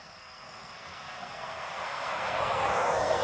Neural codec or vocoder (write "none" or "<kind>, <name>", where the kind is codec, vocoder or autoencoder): codec, SNAC